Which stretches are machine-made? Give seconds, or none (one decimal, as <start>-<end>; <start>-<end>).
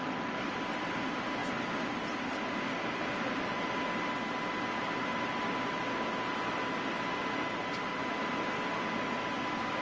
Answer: none